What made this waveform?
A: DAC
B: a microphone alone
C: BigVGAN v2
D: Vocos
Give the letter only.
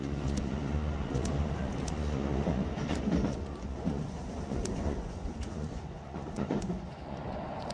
D